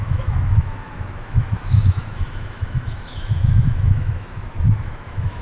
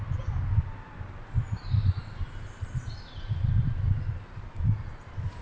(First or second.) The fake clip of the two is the first